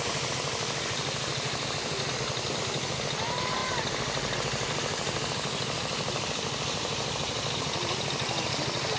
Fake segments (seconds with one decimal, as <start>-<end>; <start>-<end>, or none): none